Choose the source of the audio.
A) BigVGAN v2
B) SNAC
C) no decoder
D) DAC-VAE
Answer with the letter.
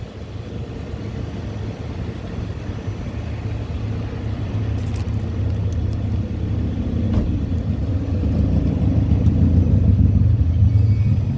C